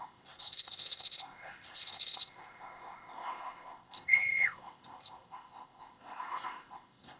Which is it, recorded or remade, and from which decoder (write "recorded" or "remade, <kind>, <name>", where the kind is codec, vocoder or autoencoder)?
remade, codec, ZipCodec